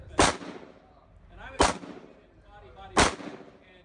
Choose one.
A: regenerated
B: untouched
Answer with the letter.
B